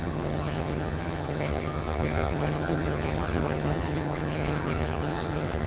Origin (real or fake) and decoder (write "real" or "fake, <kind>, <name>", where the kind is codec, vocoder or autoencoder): fake, vocoder, HiFi-GAN